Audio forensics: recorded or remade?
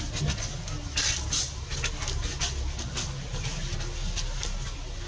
recorded